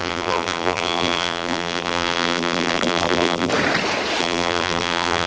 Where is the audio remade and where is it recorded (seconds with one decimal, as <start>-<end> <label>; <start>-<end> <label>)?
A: 0.0-3.5 remade; 3.5-4.2 recorded; 4.2-5.3 remade